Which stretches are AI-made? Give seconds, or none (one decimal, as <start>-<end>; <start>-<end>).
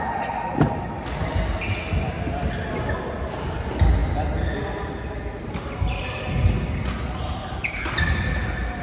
none